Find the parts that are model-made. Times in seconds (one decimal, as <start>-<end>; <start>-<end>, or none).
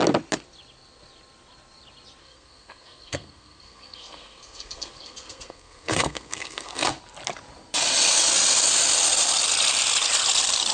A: 2.2-7.0